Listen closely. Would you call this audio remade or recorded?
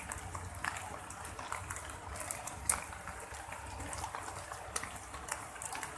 recorded